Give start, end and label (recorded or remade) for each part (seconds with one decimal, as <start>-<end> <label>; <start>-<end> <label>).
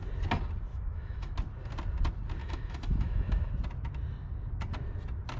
0.0-0.7 recorded; 0.7-1.3 remade; 1.3-2.4 recorded; 2.4-3.5 remade; 3.5-5.4 recorded